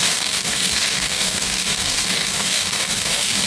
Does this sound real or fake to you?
fake